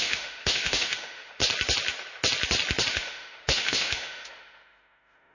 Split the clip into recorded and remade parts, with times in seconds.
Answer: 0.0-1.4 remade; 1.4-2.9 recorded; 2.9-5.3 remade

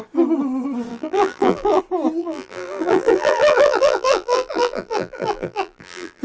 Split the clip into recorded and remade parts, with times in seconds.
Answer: 0.0-0.9 recorded; 0.9-1.8 remade; 1.8-2.2 recorded; 2.2-6.2 remade

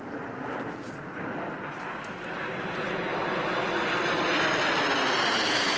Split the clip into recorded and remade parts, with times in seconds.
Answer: 0.0-5.8 recorded

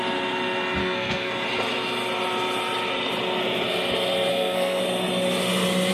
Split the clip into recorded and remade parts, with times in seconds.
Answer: 0.0-0.8 recorded; 0.8-1.3 remade; 1.3-4.3 recorded; 4.3-4.8 remade; 4.8-5.9 recorded

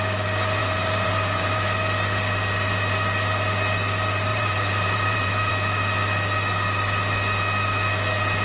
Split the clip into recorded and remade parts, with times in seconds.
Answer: 0.0-0.6 recorded; 0.6-1.6 remade; 1.6-4.3 recorded; 4.3-5.5 remade; 5.5-8.4 recorded

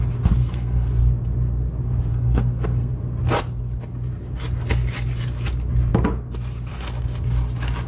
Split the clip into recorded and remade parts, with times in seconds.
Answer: 0.0-0.4 recorded; 0.4-1.0 remade; 1.0-2.1 recorded; 2.1-2.9 remade; 2.9-7.9 recorded

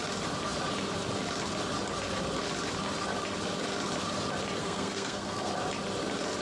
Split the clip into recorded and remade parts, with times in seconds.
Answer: 0.0-4.6 recorded; 4.6-5.5 remade; 5.5-6.4 recorded